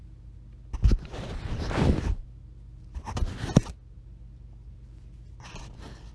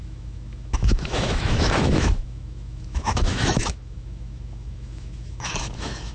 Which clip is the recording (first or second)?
first